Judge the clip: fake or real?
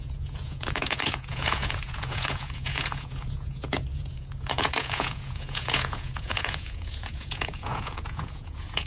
fake